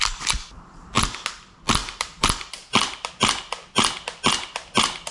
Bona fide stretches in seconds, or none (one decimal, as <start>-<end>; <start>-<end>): 0.0-1.8; 3.1-5.1